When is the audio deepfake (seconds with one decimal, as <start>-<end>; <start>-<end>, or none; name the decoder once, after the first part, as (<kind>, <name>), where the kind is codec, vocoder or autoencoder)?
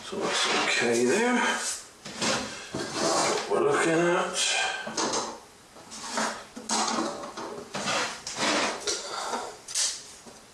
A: none